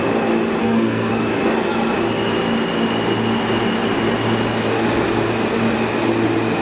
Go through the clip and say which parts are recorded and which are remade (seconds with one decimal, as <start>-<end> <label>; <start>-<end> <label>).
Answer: 0.0-0.6 recorded; 0.6-1.1 remade; 1.1-6.6 recorded